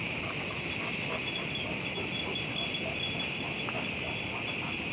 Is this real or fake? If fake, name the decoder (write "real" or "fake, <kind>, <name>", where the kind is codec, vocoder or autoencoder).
fake, vocoder, BigVGAN v2